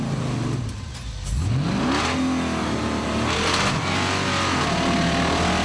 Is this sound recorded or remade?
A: recorded